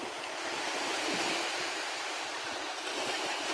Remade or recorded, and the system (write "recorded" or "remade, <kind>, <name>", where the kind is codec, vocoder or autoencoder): recorded